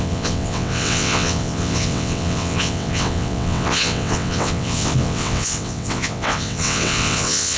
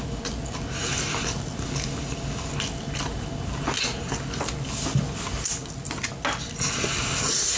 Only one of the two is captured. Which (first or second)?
second